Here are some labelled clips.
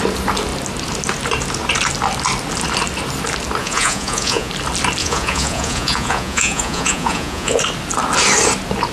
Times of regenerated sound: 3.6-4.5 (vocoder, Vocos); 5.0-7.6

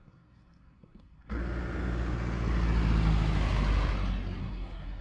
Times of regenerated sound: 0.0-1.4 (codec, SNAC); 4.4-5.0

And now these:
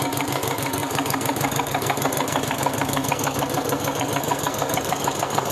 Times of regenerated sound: 0.0-5.5 (codec, SNAC)

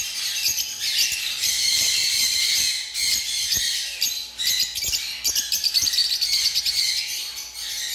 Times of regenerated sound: 1.3-4.2 (vocoder, BigVGAN v2)

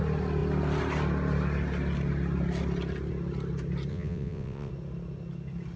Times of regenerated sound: 3.9-4.7 (vocoder, WaveNeXt)

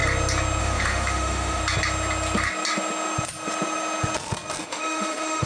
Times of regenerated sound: 0.6-1.6 (autoencoder, DAC-VAE); 4.6-5.5

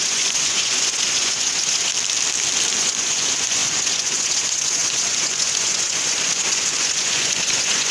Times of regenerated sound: 0.0-1.9 (vocoder, Vocos); 2.8-7.9